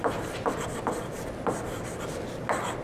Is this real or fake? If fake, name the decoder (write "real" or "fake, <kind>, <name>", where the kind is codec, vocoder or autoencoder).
real